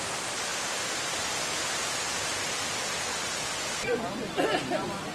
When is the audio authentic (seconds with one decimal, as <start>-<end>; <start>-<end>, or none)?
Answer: 0.0-5.1